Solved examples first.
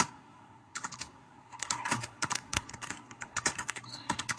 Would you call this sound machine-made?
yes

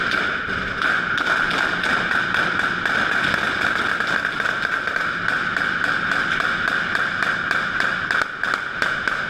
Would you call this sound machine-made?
no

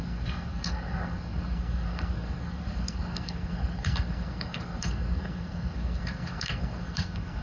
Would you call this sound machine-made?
yes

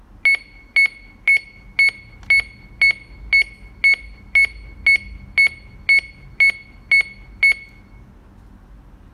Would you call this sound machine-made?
no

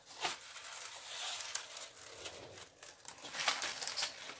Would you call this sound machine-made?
no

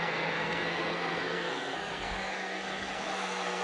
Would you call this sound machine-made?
yes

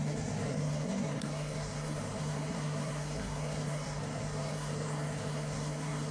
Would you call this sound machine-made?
yes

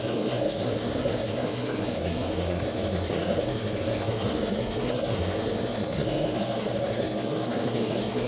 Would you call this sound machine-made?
yes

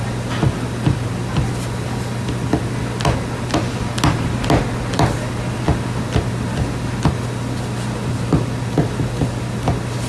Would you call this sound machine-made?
no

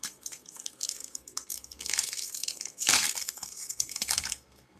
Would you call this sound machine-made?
yes